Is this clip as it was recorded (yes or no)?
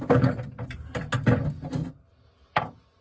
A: yes